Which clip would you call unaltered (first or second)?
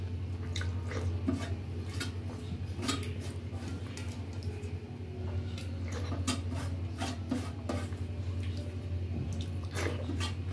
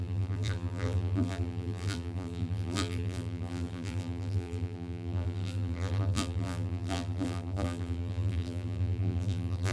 first